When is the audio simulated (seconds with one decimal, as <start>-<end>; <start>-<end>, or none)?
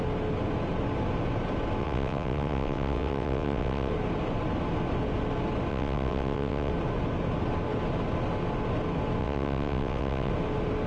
1.8-3.9; 5.7-6.7; 9.2-10.3